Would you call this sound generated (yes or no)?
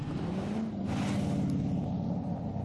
no